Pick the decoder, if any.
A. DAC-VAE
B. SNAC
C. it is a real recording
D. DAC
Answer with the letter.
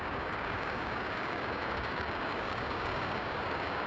D